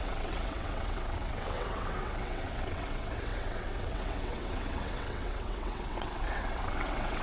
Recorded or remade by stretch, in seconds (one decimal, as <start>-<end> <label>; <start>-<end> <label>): 0.0-7.2 remade